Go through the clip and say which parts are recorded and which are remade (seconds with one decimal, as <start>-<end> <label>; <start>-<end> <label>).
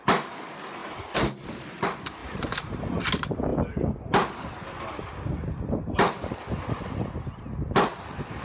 0.0-0.8 recorded; 0.8-1.8 remade; 1.8-2.2 recorded; 2.2-3.0 remade; 3.0-8.4 recorded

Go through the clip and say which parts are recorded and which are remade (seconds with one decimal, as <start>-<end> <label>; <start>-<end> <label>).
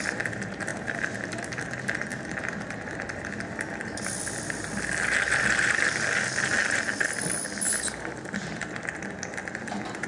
0.0-0.7 recorded; 0.7-1.6 remade; 1.6-10.1 recorded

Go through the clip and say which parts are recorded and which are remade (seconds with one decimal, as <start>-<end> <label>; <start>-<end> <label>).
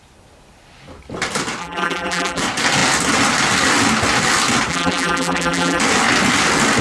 0.0-1.6 recorded; 1.6-2.4 remade; 2.4-4.7 recorded; 4.7-5.8 remade; 5.8-6.8 recorded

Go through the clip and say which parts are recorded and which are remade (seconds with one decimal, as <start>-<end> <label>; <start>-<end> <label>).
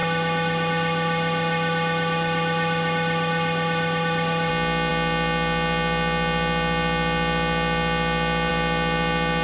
0.0-4.5 remade; 4.5-9.4 recorded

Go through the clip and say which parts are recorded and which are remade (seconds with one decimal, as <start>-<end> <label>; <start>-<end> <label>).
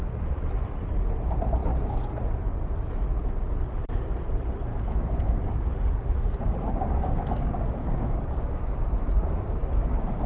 0.0-4.7 recorded; 4.7-9.6 remade; 9.6-10.3 recorded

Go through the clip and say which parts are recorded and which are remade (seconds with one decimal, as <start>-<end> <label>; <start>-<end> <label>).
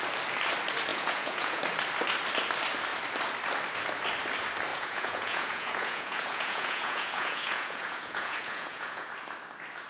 0.0-0.9 recorded; 0.9-1.6 remade; 1.6-4.7 recorded; 4.7-9.1 remade; 9.1-9.9 recorded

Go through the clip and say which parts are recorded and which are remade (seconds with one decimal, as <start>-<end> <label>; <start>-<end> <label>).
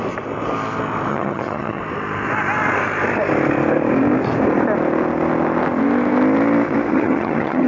0.0-1.1 recorded; 1.1-1.8 remade; 1.8-6.9 recorded; 6.9-7.7 remade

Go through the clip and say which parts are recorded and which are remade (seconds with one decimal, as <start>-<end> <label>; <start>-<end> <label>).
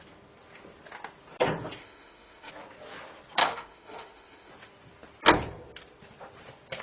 0.0-1.8 recorded; 1.8-2.5 remade; 2.5-3.4 recorded; 3.4-4.5 remade; 4.5-6.8 recorded